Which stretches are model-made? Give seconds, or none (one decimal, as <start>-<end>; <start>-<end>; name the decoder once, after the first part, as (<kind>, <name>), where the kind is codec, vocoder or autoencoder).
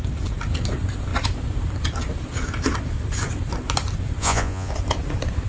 4.2-4.7 (vocoder, Vocos)